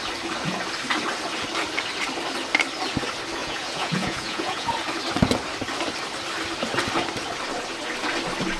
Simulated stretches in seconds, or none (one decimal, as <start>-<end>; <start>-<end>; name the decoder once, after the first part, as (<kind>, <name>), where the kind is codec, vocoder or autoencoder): 3.4-4.7 (vocoder, Vocos)